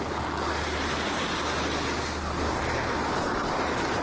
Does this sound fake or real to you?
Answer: real